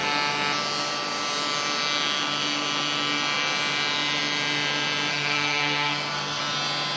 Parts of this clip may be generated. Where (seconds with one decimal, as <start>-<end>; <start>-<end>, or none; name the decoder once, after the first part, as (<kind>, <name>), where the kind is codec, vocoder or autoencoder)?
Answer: 5.1-6.4 (codec, SNAC)